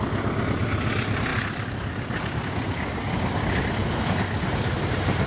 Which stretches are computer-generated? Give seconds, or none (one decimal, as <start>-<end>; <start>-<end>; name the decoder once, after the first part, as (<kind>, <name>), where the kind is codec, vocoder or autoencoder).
none